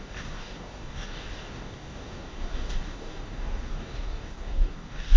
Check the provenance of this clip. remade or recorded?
remade